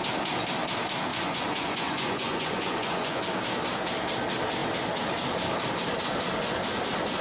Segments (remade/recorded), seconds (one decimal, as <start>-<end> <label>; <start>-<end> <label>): 0.0-1.1 recorded; 1.1-3.2 remade; 3.2-7.2 recorded